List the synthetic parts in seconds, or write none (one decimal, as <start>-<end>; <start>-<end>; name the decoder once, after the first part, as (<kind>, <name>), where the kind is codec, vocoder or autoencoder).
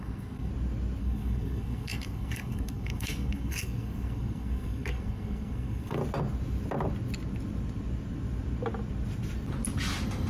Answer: 0.0-0.5 (codec, SNAC); 1.0-6.0